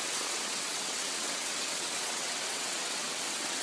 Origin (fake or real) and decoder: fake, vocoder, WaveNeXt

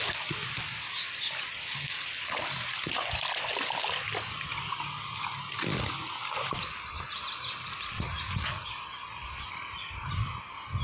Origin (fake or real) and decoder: real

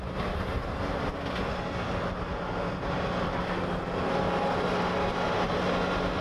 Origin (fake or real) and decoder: real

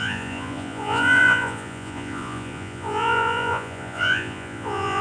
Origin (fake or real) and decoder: fake, vocoder, Vocos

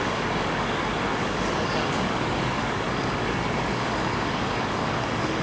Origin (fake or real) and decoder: fake, codec, DAC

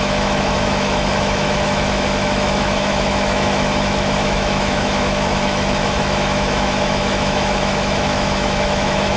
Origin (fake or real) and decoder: fake, autoencoder, DAC-VAE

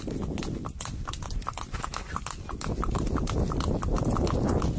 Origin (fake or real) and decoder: real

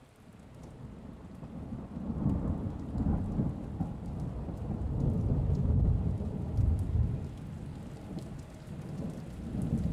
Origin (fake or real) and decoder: real